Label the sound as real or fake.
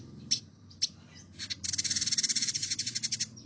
real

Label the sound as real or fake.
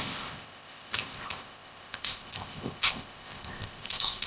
fake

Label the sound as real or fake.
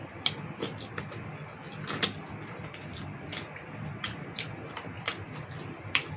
real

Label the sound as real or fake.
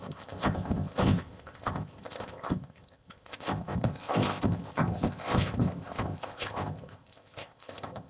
fake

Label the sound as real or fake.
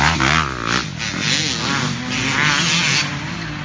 real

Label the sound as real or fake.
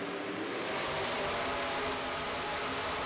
real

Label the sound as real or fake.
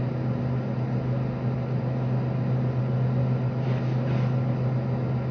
real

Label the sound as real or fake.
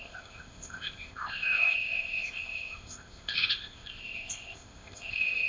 fake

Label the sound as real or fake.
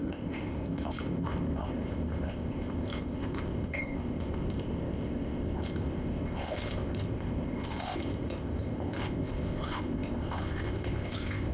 fake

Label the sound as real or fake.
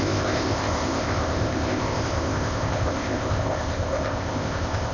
fake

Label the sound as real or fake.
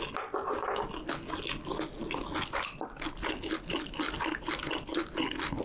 real